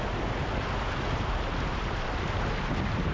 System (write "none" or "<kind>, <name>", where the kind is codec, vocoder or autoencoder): none